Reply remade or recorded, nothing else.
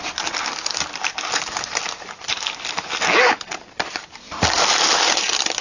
recorded